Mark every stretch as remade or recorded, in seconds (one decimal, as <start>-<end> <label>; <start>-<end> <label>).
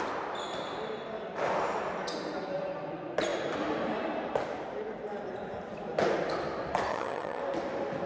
0.0-6.9 recorded; 6.9-7.4 remade; 7.4-8.1 recorded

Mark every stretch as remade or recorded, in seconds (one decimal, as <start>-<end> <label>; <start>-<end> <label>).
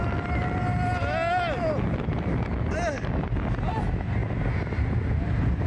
0.0-5.7 recorded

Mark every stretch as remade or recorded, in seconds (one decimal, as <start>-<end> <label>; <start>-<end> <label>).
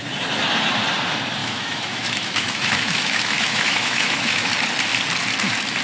0.0-1.4 recorded; 1.4-4.5 remade; 4.5-5.8 recorded